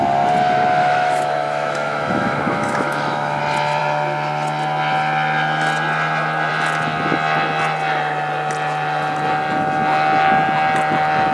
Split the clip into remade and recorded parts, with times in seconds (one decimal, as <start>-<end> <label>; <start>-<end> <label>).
0.0-0.8 recorded; 0.8-3.4 remade; 3.4-11.3 recorded